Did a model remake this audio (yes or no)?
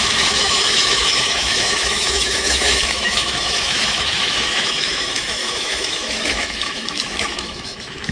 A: yes